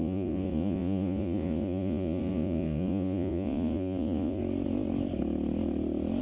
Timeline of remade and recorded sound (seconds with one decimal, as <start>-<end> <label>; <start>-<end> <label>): 0.0-4.4 remade; 4.4-6.2 recorded